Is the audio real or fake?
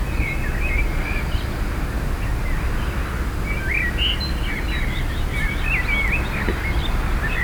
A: real